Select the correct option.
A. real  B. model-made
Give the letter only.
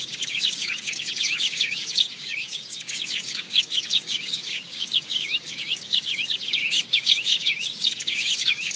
B